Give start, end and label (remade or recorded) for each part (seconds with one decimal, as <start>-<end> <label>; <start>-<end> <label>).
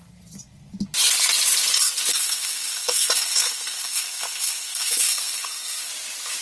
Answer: 0.0-2.1 recorded; 2.1-5.9 remade; 5.9-6.4 recorded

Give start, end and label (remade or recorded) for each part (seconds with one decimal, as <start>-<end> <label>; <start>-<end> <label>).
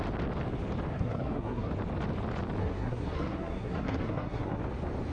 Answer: 0.0-0.9 recorded; 0.9-1.7 remade; 1.7-2.6 recorded; 2.6-4.6 remade; 4.6-5.1 recorded